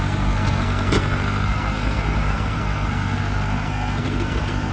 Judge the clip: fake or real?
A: fake